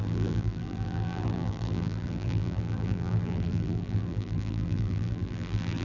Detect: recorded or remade remade